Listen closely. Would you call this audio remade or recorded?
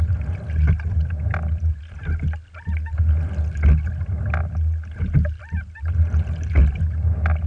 recorded